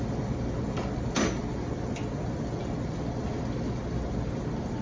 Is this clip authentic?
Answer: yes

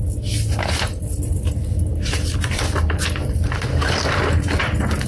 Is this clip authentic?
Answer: yes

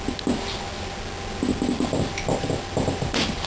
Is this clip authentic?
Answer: yes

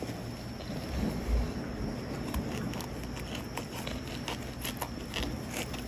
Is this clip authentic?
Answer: yes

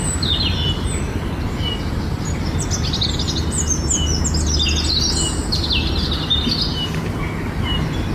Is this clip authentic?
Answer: yes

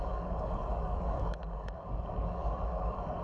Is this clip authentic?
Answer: no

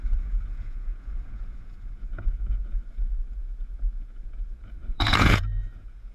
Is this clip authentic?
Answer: no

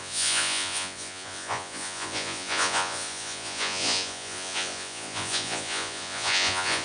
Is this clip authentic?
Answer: no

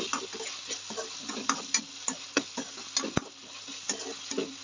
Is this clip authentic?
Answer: yes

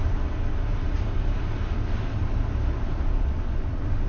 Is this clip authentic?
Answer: yes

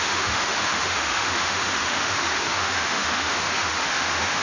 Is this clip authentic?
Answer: no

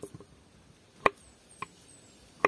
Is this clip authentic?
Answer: yes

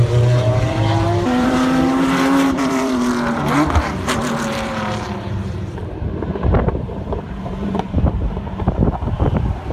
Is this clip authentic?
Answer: no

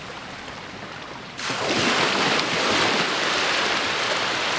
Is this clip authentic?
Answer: yes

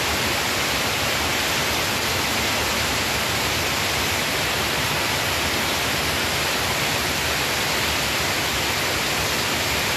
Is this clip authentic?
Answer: no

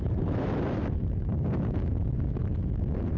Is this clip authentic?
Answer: no